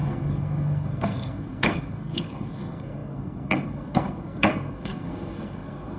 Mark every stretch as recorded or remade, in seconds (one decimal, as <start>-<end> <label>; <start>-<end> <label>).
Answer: 0.0-6.0 remade